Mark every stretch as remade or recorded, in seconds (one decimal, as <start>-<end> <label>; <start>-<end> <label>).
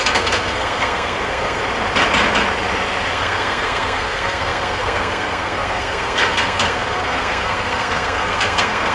0.0-1.6 remade; 1.6-3.1 recorded; 3.1-8.9 remade